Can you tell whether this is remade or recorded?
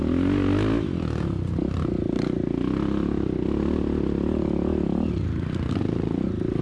recorded